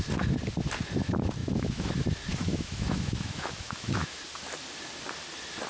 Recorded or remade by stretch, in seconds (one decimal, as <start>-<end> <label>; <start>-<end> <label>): 0.0-1.4 recorded; 1.4-1.9 remade; 1.9-2.3 recorded; 2.3-4.2 remade; 4.2-5.7 recorded